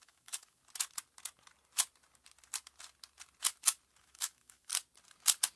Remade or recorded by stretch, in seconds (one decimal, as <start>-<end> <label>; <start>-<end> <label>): 0.0-0.6 remade; 0.6-4.0 recorded; 4.0-4.7 remade; 4.7-5.6 recorded